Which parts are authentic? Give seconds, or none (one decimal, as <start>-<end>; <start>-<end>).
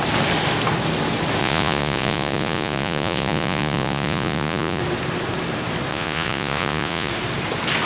0.0-1.4; 4.8-5.9; 7.1-7.9